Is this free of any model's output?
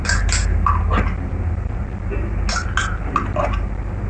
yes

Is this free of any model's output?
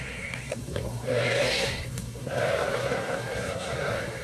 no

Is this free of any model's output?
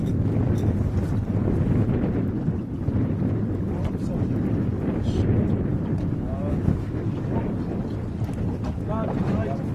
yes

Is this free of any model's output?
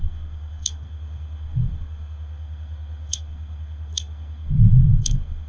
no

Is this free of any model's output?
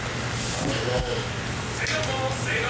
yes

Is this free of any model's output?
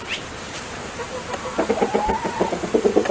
yes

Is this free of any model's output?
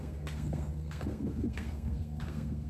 no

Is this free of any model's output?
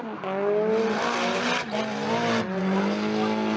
yes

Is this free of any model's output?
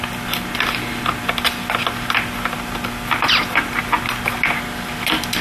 yes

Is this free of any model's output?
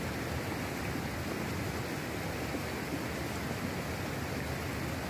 yes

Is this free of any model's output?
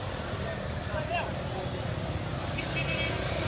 yes